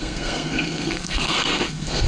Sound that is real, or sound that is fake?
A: fake